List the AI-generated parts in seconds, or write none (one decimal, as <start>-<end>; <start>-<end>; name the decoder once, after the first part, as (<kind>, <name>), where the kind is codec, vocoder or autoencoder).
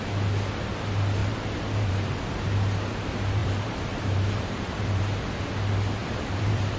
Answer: 1.2-2.4 (vocoder, BigVGAN v2); 3.4-5.0; 6.0-6.8